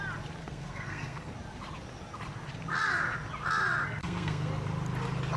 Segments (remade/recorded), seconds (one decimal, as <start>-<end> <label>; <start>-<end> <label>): 0.0-0.4 recorded; 0.4-1.3 remade; 1.3-4.0 recorded; 4.0-4.5 remade; 4.5-5.4 recorded